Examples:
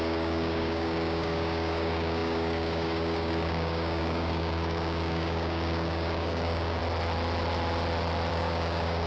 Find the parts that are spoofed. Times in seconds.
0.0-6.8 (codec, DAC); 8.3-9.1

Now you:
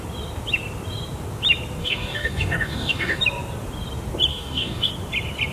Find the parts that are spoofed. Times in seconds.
1.8-3.2 (codec, DAC); 4.3-4.9

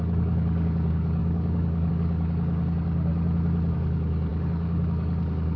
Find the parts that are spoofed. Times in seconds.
0.0-3.1 (codec, DAC); 3.7-5.6